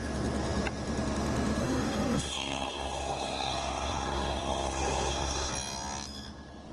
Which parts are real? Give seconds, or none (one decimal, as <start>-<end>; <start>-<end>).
0.0-1.6; 5.5-6.7